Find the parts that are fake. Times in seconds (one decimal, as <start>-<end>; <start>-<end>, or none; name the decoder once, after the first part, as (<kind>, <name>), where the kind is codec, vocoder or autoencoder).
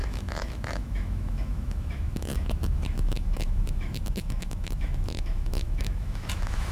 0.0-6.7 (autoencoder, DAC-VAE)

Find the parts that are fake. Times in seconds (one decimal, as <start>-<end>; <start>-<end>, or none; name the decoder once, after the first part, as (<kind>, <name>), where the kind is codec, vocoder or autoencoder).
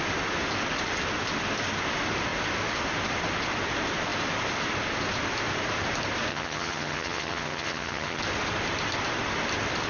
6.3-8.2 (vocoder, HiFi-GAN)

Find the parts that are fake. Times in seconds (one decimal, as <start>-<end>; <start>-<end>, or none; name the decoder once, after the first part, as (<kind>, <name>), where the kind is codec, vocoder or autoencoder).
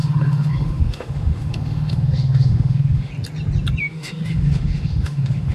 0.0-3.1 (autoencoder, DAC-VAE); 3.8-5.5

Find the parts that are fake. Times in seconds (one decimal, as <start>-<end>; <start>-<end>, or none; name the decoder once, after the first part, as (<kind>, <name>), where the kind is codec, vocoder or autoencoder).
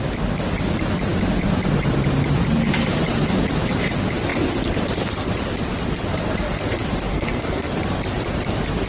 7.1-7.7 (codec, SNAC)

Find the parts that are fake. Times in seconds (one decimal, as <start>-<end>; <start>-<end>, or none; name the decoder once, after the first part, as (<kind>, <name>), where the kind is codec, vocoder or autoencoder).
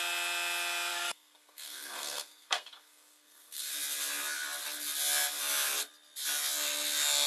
0.9-3.7 (codec, SNAC)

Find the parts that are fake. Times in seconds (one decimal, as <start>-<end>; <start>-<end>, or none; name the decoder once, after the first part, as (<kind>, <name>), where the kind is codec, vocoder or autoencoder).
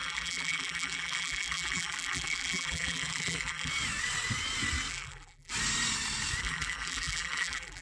0.0-3.7 (vocoder, BigVGAN v2); 4.9-5.5; 6.4-7.8